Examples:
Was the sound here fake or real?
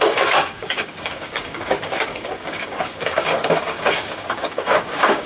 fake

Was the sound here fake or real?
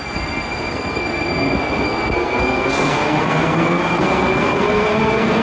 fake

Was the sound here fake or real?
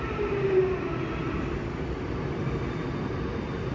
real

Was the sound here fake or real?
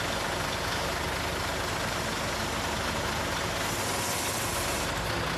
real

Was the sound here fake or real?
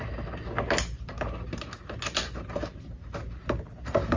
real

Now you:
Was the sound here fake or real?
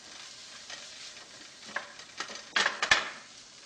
real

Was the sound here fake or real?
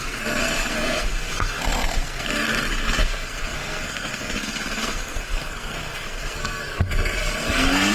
fake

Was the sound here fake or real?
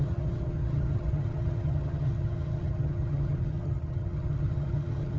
fake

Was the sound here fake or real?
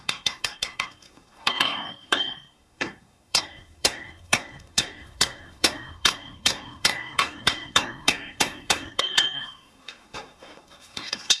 fake